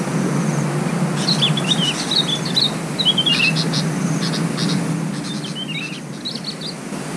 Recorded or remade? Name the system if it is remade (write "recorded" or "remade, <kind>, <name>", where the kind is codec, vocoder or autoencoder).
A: recorded